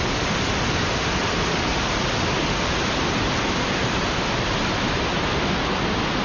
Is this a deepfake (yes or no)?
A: no